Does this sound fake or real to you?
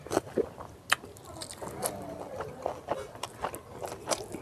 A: real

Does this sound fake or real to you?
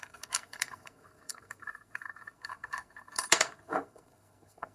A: fake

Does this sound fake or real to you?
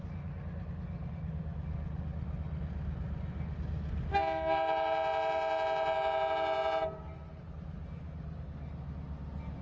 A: real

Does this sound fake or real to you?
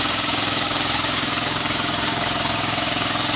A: fake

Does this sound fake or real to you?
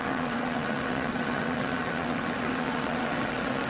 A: fake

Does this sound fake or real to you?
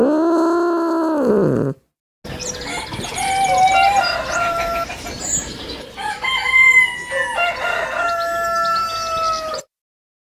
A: real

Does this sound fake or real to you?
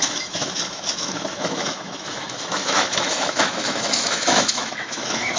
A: fake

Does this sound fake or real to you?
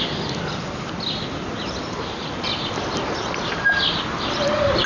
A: real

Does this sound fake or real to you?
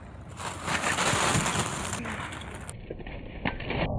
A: real